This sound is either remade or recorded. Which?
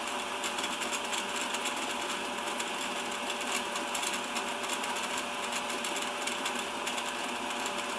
recorded